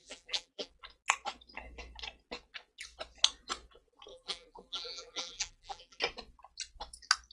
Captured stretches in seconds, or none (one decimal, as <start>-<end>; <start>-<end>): 0.7-4.1; 6.0-7.3